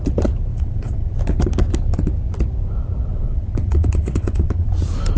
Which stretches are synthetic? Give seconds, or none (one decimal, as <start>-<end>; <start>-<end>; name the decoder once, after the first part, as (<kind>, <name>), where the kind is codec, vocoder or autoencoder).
0.5-1.1 (vocoder, WaveNeXt); 3.1-4.7